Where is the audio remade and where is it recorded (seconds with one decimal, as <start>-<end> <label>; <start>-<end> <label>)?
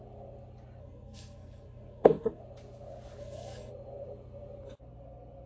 0.0-0.8 recorded; 0.8-2.4 remade; 2.4-3.2 recorded; 3.2-3.7 remade; 3.7-5.5 recorded